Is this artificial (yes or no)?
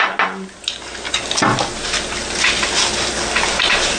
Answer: no